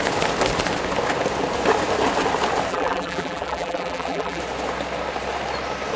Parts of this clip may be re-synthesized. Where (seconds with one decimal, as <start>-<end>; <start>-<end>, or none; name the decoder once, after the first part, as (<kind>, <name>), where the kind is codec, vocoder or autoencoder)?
2.7-4.4 (vocoder, BigVGAN v2)